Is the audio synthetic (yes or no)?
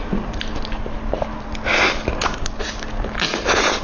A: no